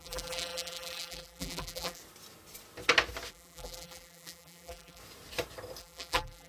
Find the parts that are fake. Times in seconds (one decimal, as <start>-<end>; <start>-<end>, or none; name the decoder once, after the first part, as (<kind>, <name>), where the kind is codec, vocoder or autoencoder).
0.0-2.0 (vocoder, BigVGAN v2); 3.3-5.0; 5.8-6.5